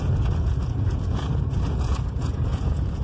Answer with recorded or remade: remade